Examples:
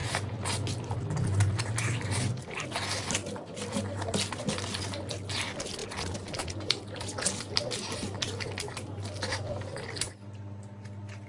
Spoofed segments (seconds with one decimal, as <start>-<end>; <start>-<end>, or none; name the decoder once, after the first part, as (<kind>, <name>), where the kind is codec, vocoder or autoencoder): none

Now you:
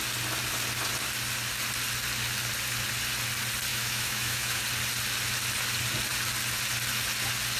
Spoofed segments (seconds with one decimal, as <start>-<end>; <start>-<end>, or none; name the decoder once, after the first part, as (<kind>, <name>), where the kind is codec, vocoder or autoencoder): 3.7-4.6 (autoencoder, DAC-VAE)

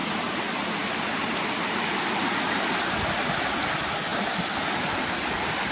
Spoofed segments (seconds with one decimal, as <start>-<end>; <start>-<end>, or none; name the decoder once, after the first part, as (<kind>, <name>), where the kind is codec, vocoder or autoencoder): none